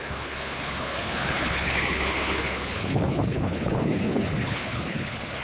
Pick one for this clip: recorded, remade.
remade